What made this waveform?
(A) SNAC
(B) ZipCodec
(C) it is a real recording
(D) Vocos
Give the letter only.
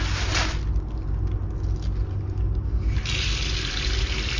C